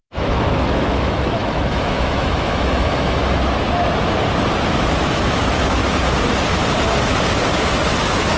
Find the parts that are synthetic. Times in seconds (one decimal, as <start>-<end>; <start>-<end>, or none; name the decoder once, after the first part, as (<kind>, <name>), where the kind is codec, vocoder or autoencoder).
0.0-3.2 (autoencoder, DAC-VAE); 4.7-5.8; 8.0-8.4